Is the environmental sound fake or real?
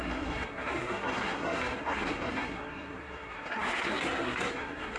fake